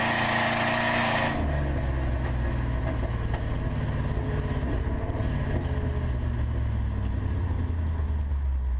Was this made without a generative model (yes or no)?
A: yes